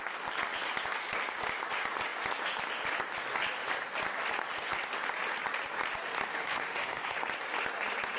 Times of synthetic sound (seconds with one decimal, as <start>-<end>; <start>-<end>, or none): 6.3-7.2